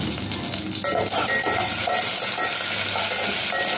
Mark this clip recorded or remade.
recorded